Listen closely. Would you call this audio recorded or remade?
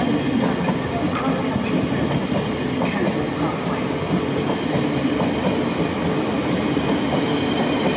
recorded